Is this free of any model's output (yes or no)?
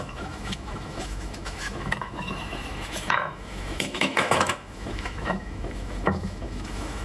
no